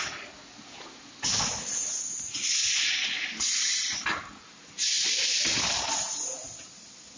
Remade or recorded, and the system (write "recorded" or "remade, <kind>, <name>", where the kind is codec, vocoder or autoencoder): recorded